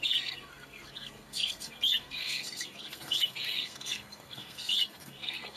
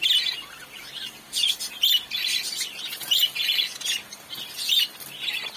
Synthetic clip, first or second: first